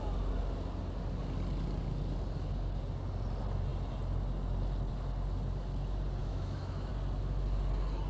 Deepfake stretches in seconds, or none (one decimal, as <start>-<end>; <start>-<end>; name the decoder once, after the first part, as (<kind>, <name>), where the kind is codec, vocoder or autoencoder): 6.2-6.9 (autoencoder, DAC-VAE)